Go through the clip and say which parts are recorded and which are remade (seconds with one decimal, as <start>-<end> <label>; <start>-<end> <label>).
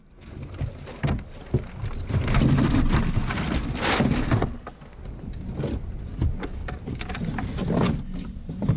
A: 0.0-6.1 recorded; 6.1-7.1 remade; 7.1-8.8 recorded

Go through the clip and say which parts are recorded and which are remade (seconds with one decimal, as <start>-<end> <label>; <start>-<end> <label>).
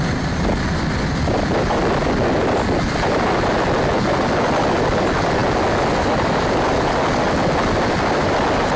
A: 0.0-8.8 recorded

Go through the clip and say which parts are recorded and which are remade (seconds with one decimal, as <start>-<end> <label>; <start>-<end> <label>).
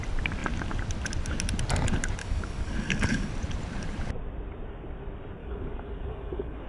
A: 0.0-2.2 recorded; 2.2-3.3 remade; 3.3-5.4 recorded; 5.4-6.7 remade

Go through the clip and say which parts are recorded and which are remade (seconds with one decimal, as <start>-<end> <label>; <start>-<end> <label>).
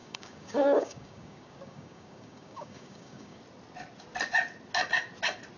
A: 0.0-3.4 remade; 3.4-5.6 recorded